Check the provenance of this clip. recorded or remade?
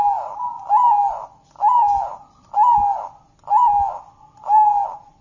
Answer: recorded